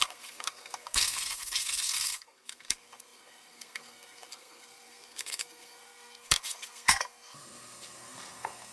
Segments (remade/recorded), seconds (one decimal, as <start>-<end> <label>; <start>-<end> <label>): 0.0-8.7 remade